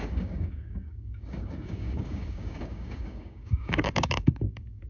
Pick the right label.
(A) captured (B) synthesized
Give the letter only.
B